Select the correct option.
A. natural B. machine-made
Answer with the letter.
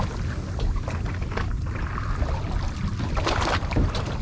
A